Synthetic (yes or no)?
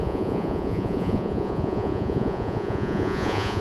yes